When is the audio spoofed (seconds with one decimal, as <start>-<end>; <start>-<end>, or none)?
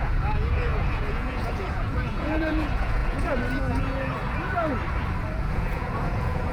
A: 0.0-4.2; 5.4-6.5